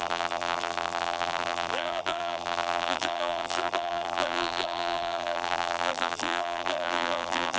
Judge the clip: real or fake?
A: fake